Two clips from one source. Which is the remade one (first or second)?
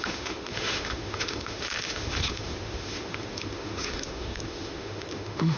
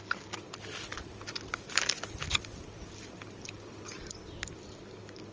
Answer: first